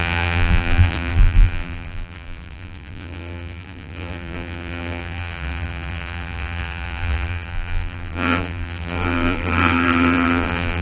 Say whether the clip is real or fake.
fake